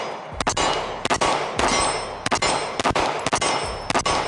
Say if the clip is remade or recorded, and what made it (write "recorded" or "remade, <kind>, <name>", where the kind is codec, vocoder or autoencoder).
recorded